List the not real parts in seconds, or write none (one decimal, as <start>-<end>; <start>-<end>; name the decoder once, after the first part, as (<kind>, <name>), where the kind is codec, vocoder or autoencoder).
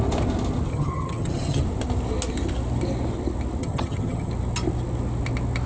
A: 0.7-1.6 (vocoder, HiFi-GAN); 3.6-4.3